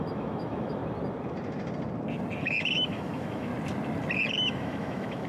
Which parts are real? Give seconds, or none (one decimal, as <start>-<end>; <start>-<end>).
0.8-2.4; 3.5-4.3